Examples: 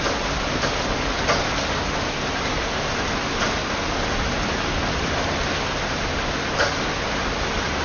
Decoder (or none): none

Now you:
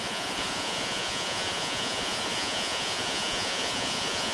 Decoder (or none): vocoder, Vocos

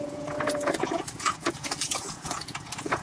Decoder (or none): vocoder, Vocos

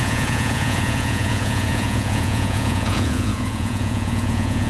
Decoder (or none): vocoder, Vocos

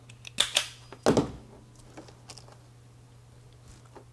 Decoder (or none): none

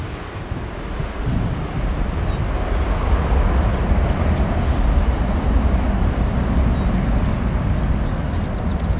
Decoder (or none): none